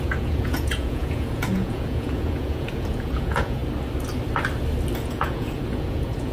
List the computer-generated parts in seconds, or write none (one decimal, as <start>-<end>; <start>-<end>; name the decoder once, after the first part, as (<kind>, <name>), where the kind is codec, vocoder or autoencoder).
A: 0.0-3.6 (vocoder, Vocos); 5.0-6.3